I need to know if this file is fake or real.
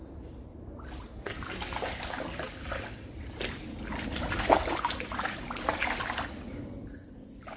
real